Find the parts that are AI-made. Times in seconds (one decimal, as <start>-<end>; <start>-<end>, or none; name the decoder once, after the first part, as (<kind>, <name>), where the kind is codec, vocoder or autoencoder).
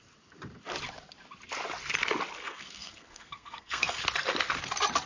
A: 2.4-4.0 (codec, SNAC)